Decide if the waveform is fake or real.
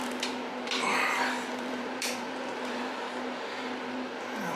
fake